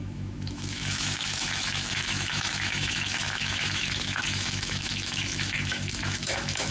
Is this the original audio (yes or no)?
no